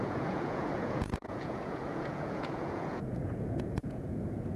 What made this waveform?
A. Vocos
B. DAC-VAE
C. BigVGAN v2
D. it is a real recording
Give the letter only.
A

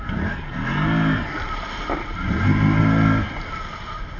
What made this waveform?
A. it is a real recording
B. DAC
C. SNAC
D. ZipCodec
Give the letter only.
A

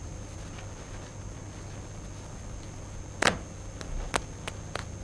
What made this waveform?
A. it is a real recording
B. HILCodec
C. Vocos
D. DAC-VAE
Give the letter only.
A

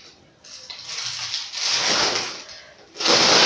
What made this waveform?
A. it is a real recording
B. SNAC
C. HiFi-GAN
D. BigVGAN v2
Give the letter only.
A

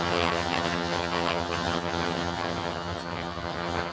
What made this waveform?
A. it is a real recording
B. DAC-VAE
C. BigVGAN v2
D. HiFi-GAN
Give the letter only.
D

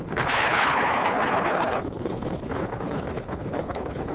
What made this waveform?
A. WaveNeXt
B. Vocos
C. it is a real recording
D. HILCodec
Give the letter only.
D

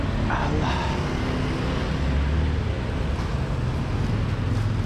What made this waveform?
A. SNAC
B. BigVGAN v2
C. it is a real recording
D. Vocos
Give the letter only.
C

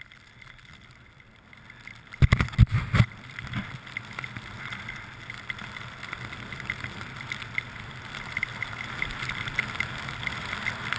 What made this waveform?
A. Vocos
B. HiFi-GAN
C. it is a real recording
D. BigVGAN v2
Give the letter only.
C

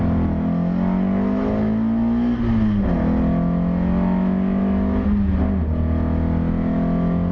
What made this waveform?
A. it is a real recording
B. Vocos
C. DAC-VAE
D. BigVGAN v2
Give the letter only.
A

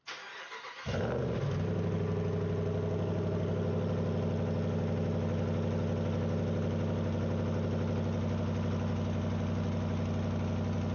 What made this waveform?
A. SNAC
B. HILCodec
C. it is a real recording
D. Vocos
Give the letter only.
C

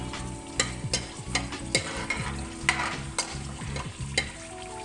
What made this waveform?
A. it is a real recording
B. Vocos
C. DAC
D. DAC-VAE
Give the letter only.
A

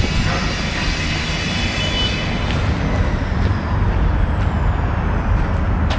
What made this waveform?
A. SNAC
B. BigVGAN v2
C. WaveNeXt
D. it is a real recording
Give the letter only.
D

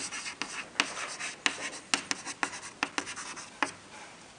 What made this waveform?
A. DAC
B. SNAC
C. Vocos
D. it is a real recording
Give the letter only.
D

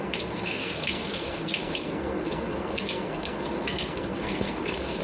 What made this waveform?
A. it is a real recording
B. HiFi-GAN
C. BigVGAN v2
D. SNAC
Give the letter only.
D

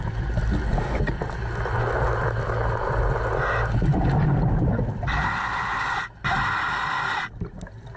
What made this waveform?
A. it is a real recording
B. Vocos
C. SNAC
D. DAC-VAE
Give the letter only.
A